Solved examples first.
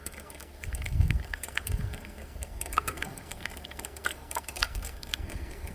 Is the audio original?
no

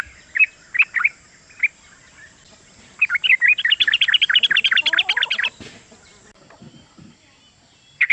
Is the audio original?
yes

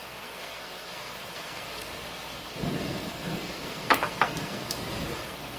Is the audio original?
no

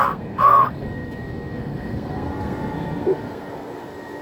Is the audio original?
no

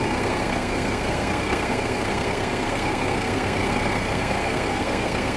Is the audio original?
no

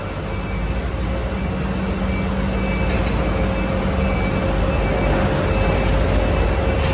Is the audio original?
yes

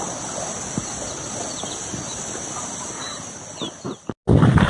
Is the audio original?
yes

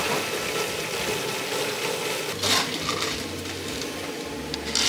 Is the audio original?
yes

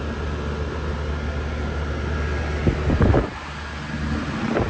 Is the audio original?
yes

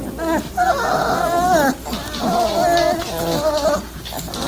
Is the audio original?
yes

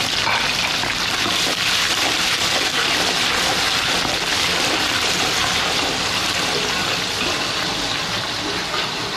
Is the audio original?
yes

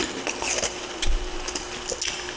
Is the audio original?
yes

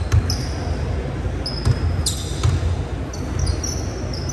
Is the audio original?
yes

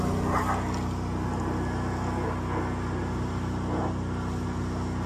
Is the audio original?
yes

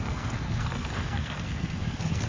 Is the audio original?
no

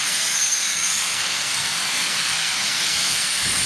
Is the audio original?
no